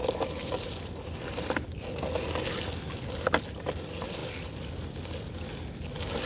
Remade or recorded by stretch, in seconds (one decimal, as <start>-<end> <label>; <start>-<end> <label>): 0.0-6.3 recorded